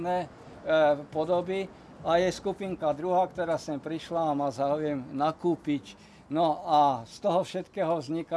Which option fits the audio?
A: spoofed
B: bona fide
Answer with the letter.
B